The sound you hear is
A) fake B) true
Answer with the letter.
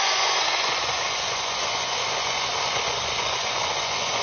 A